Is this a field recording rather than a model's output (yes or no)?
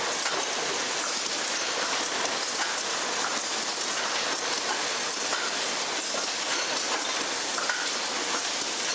yes